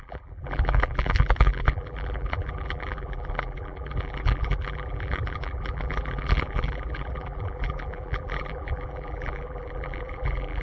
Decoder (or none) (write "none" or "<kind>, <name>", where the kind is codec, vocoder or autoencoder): vocoder, BigVGAN v2